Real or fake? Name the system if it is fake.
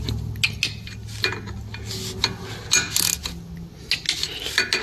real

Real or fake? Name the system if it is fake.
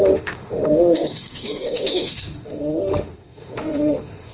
fake, autoencoder, DAC-VAE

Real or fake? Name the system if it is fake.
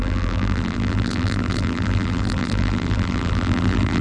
fake, vocoder, BigVGAN v2